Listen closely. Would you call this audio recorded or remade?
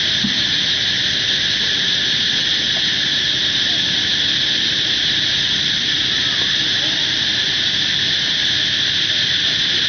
recorded